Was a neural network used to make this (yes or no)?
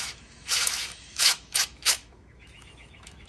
yes